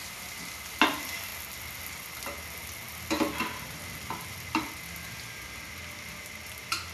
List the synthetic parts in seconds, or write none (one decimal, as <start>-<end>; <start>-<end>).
none